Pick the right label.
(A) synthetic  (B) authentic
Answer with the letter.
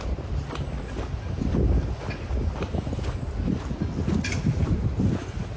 B